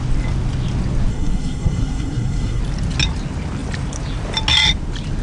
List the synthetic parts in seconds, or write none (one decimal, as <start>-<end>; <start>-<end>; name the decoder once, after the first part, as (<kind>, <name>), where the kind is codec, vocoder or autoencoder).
1.1-2.6 (codec, SNAC)